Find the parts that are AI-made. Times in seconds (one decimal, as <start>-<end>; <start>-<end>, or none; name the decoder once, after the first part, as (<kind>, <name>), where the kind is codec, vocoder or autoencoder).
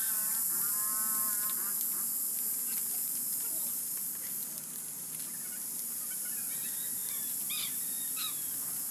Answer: none